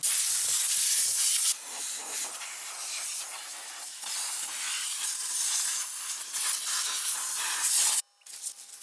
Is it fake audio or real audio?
real